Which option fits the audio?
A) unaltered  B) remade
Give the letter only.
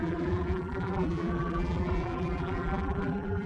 B